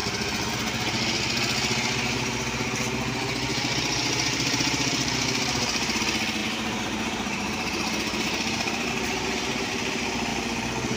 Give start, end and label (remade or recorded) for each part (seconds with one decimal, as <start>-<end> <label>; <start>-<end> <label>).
0.0-3.5 recorded; 3.5-6.0 remade; 6.0-6.4 recorded; 6.4-8.9 remade; 8.9-11.0 recorded